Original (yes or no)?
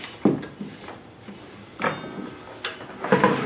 yes